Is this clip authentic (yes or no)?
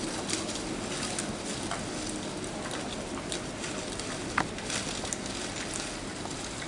yes